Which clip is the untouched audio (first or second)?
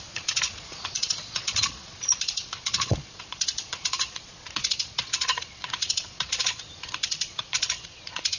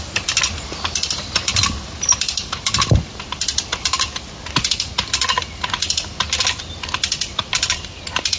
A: second